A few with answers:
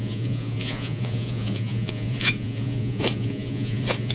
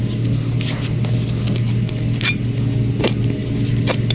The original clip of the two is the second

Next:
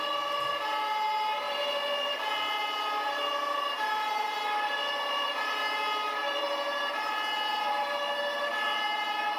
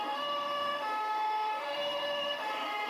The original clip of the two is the first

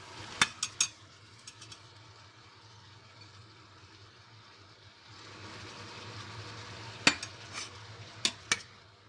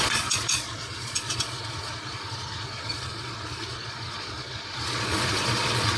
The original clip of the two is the first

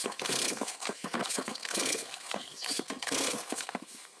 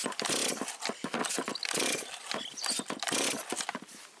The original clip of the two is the second